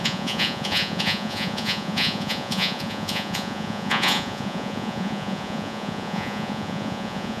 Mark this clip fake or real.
fake